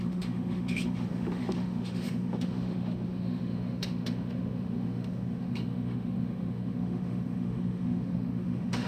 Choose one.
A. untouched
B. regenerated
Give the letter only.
B